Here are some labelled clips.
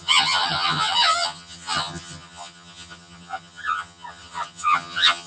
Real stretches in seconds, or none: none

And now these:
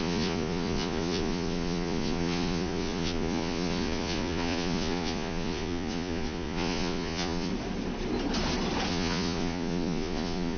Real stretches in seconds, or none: 7.5-8.9

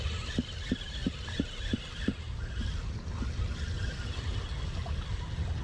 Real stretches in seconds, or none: 0.0-5.6

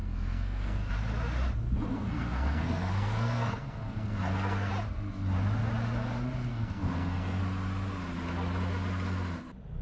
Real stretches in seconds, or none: 0.9-1.9; 4.7-6.5; 7.4-9.8

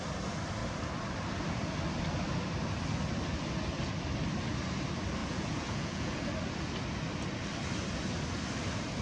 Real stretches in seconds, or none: 0.0-5.2; 6.2-9.0

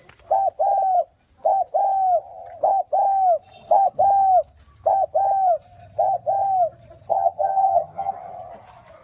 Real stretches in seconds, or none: 0.0-7.1; 8.1-9.0